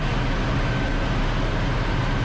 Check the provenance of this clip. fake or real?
real